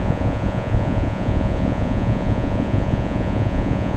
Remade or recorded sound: remade